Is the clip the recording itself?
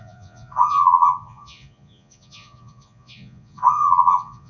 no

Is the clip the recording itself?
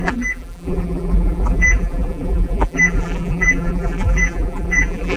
no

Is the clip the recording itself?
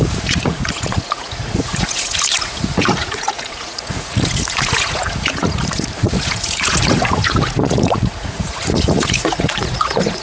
no